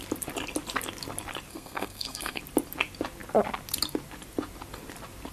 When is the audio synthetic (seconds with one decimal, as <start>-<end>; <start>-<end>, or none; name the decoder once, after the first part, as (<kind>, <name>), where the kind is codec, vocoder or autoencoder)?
1.5-2.4 (codec, SNAC)